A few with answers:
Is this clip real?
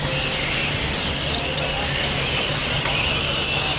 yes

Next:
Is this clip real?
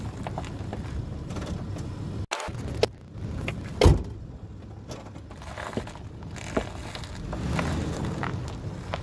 yes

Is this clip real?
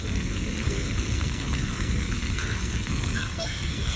no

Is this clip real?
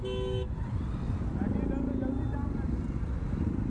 yes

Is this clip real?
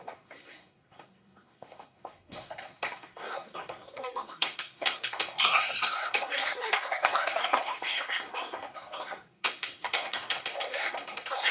no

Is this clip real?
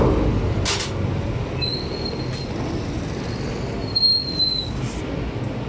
yes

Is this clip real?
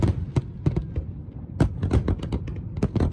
yes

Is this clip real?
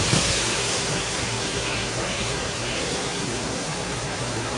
no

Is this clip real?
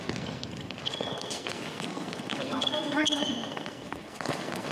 no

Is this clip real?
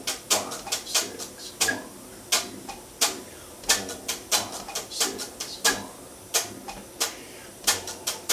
yes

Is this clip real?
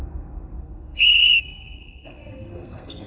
no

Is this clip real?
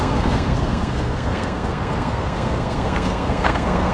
no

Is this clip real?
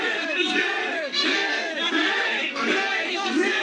no